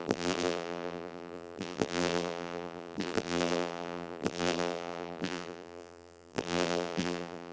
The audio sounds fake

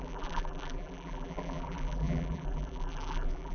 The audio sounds fake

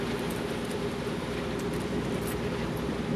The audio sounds fake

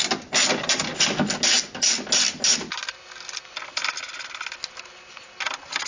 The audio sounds real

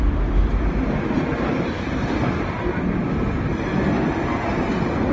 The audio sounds real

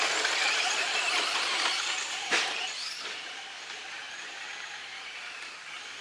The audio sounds fake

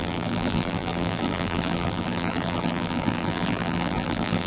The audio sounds fake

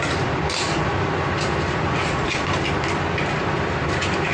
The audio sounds fake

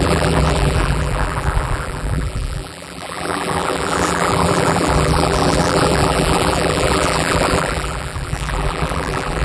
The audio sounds fake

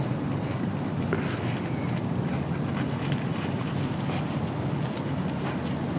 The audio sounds real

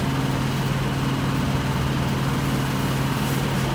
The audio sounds real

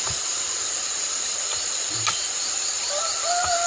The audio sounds fake